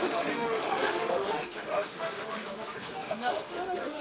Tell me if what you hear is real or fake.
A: fake